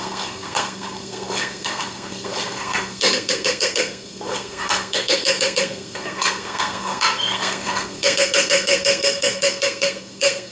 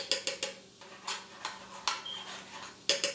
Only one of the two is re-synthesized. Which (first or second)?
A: first